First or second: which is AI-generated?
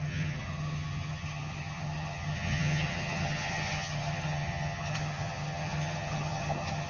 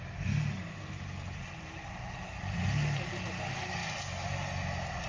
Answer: first